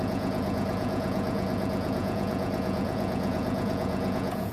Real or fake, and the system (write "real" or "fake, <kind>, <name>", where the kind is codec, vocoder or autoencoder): fake, vocoder, Vocos